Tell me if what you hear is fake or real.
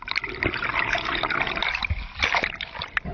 real